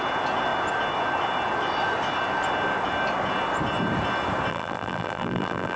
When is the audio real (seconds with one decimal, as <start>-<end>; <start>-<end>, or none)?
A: 0.0-4.5